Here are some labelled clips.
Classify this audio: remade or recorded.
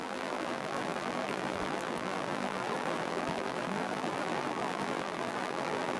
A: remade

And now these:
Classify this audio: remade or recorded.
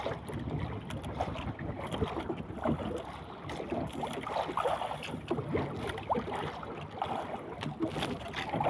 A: recorded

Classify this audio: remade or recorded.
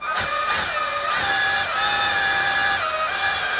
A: recorded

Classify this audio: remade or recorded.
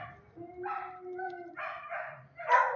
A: remade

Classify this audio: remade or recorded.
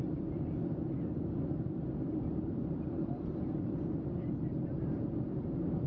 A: remade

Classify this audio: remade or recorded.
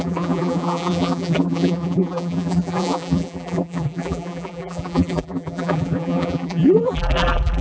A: remade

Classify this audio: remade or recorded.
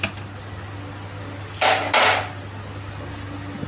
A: recorded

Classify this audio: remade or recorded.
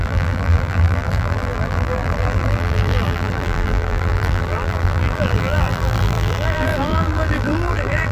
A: remade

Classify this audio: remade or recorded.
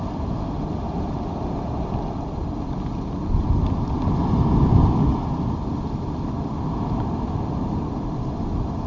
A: recorded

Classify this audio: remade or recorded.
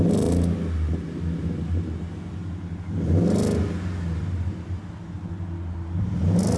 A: recorded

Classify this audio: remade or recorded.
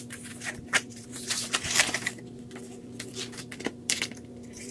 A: remade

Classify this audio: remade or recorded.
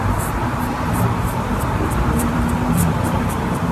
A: remade